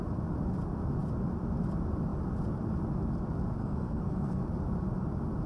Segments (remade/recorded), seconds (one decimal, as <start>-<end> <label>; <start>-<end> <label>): 0.0-3.6 recorded; 3.6-4.4 remade; 4.4-5.5 recorded